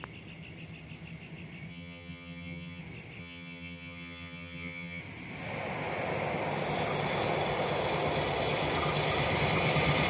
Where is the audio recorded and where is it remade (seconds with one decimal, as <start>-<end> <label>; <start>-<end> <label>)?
0.0-1.7 recorded; 1.7-2.8 remade; 2.8-3.2 recorded; 3.2-5.0 remade; 5.0-10.1 recorded

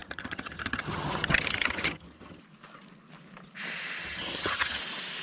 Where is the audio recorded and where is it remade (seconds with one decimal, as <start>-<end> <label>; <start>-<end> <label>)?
0.0-2.4 remade; 2.4-4.0 recorded; 4.0-4.8 remade; 4.8-5.2 recorded

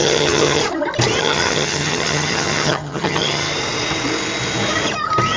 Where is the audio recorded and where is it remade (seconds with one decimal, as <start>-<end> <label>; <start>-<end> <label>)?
0.0-0.6 remade; 0.6-1.2 recorded; 1.2-3.5 remade; 3.5-5.4 recorded

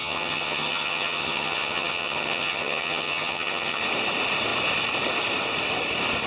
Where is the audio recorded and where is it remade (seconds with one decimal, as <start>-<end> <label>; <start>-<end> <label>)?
0.0-3.8 remade; 3.8-6.3 recorded

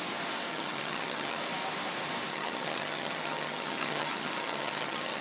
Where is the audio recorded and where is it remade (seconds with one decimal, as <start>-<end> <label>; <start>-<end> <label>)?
0.0-0.5 recorded; 0.5-1.4 remade; 1.4-2.3 recorded; 2.3-5.2 remade